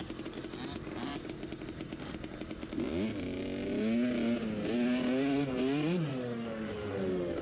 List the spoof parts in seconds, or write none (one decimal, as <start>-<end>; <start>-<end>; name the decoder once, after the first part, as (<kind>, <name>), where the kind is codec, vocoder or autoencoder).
6.1-7.4 (autoencoder, DAC-VAE)